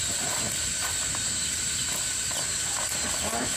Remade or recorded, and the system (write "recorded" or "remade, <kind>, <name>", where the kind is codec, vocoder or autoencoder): recorded